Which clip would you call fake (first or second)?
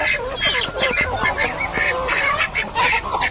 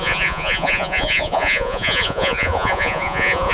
second